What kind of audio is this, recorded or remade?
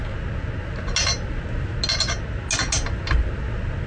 recorded